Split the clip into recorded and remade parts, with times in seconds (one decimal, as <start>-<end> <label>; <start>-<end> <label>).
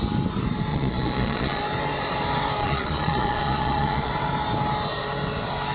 0.0-0.7 recorded; 0.7-1.6 remade; 1.6-2.6 recorded; 2.6-4.1 remade; 4.1-5.7 recorded